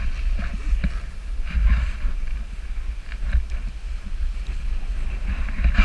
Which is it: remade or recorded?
recorded